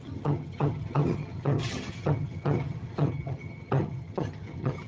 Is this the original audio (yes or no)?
no